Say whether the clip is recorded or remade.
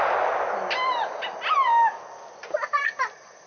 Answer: recorded